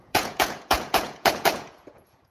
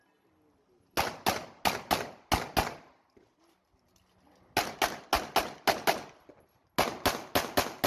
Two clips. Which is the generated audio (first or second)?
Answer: first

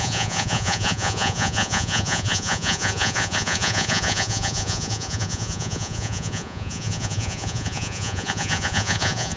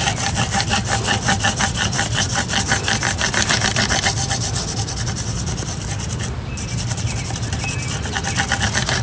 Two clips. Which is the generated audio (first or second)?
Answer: first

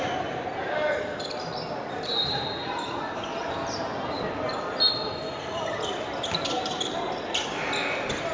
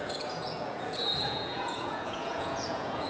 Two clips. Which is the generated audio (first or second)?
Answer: second